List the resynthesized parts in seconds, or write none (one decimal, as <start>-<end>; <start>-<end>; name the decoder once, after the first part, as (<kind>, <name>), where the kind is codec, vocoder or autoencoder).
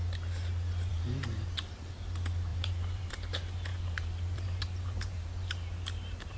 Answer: 0.9-1.9 (vocoder, BigVGAN v2); 2.5-3.1; 3.7-5.5